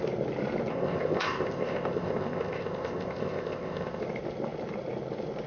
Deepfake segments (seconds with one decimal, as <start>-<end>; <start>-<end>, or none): 0.7-4.0